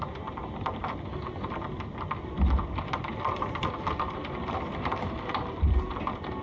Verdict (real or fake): real